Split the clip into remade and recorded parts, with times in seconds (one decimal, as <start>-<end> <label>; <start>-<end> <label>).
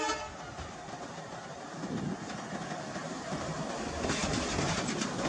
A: 0.0-3.0 recorded; 3.0-3.7 remade; 3.7-5.3 recorded